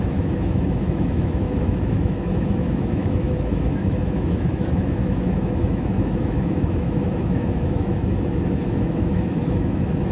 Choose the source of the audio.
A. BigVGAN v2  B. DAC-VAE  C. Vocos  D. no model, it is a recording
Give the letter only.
B